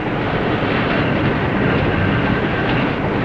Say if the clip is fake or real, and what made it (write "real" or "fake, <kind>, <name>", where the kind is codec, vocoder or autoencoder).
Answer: real